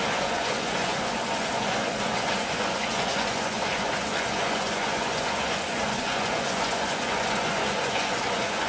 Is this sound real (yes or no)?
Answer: no